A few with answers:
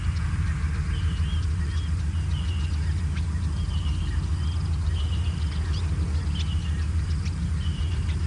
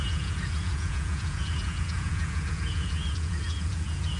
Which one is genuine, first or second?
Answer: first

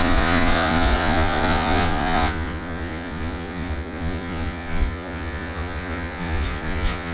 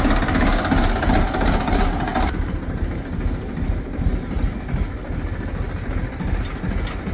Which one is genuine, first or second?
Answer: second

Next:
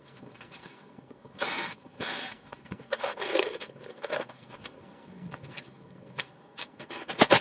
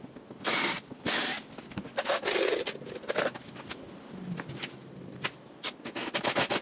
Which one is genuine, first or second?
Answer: second